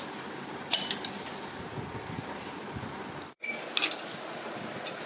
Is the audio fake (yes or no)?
yes